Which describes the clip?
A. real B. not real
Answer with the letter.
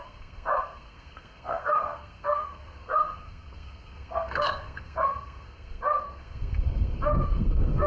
B